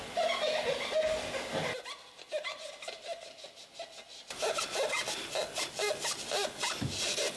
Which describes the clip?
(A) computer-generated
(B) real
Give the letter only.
B